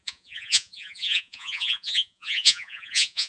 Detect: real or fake fake